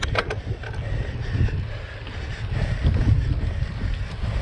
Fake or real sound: real